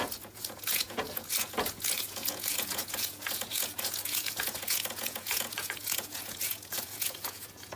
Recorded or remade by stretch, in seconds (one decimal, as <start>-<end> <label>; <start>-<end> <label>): 0.0-7.8 remade